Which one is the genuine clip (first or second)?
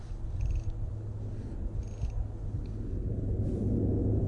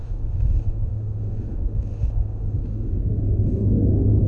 first